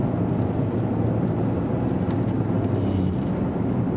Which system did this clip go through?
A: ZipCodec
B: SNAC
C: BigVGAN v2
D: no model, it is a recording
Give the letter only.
D